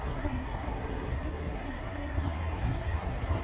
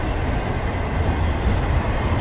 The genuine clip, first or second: second